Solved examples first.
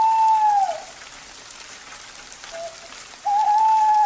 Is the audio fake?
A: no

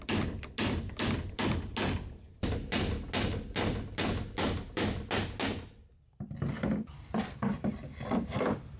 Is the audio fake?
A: no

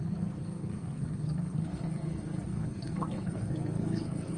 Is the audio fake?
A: yes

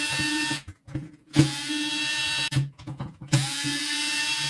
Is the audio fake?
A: yes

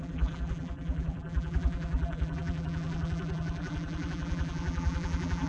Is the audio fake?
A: yes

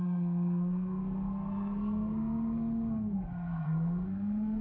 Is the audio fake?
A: yes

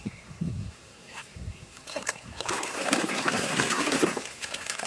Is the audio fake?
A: yes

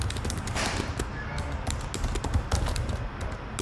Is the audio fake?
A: no